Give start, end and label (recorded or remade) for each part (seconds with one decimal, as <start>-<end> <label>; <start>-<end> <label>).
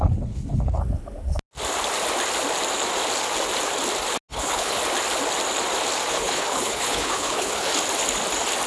0.0-0.8 remade; 0.8-4.3 recorded; 4.3-4.8 remade; 4.8-6.1 recorded; 6.1-7.7 remade; 7.7-8.7 recorded